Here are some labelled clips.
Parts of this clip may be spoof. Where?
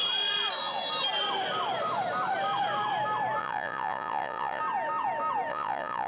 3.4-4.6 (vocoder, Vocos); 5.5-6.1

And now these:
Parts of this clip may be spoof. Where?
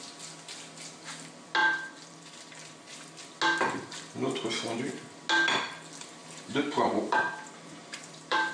1.6-3.2 (vocoder, BigVGAN v2); 6.2-8.5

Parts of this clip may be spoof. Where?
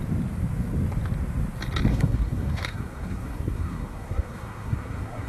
1.9-5.3 (codec, SNAC)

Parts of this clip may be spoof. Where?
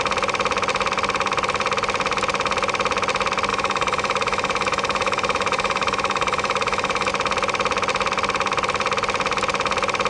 3.5-7.1 (autoencoder, DAC-VAE)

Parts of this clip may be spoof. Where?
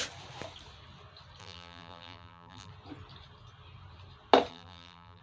1.4-2.7 (vocoder, BigVGAN v2); 4.5-5.2